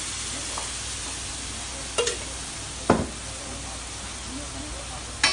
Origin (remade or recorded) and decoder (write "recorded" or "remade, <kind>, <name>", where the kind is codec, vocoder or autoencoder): recorded